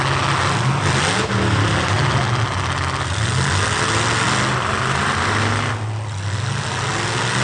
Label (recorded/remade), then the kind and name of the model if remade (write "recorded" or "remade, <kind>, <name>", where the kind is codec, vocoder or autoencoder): recorded